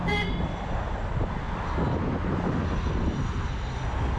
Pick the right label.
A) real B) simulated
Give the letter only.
A